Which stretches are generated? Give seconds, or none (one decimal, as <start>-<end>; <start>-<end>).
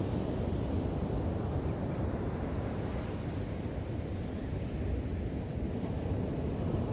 none